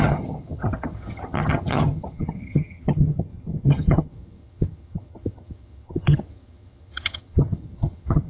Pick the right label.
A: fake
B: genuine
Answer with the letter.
A